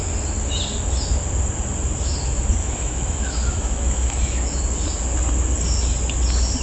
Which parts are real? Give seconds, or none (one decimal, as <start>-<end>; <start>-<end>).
0.0-2.6; 4.6-6.6